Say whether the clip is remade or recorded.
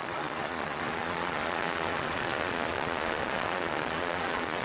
remade